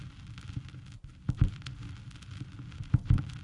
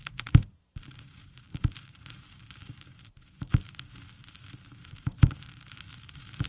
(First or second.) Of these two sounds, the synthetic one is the second